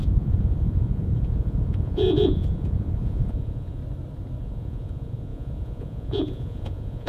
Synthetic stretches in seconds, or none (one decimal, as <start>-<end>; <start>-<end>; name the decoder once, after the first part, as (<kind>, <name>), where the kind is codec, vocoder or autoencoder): 0.0-3.8 (vocoder, Vocos); 4.4-7.1